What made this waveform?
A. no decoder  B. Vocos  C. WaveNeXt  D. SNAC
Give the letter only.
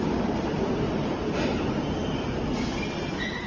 A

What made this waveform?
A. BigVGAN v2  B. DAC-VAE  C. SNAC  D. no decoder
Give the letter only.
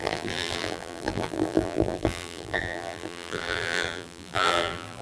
A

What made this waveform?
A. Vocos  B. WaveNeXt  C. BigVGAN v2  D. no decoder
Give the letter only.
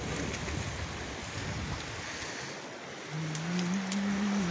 D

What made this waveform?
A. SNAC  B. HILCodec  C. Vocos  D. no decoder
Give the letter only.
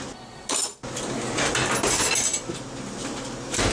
D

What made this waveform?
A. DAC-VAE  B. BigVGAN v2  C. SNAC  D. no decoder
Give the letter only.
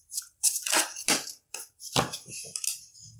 D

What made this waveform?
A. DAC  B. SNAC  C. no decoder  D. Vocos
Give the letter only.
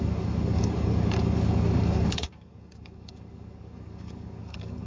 A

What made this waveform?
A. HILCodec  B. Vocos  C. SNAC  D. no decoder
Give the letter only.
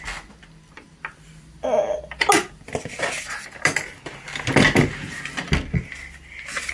D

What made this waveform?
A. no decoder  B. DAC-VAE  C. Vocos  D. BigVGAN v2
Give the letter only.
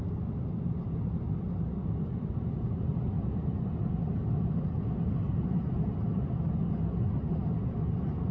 A